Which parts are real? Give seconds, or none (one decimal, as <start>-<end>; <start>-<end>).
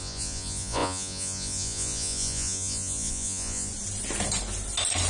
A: 3.7-5.1